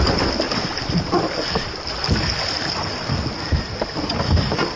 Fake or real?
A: real